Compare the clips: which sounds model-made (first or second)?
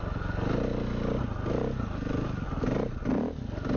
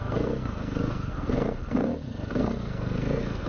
second